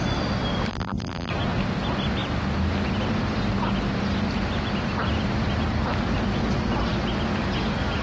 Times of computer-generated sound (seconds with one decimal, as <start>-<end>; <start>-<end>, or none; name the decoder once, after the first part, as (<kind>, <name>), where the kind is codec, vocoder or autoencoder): 0.7-1.3 (vocoder, BigVGAN v2)